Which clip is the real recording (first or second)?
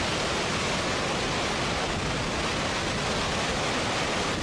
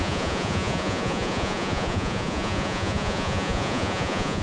first